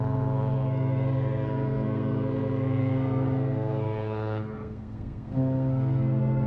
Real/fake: fake